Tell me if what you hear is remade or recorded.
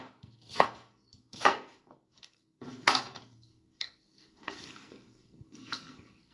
remade